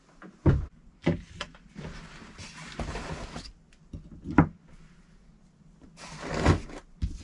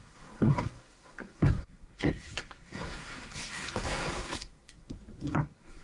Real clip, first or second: first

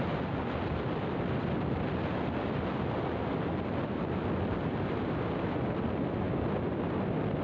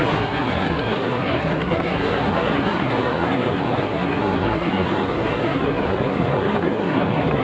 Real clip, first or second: first